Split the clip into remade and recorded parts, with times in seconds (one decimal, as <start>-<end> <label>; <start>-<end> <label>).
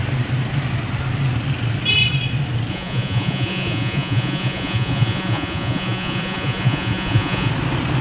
0.0-2.7 recorded; 2.7-7.5 remade; 7.5-8.0 recorded